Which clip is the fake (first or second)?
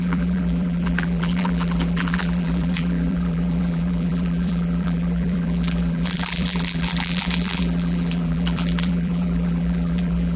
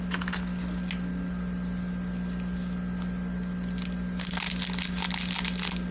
first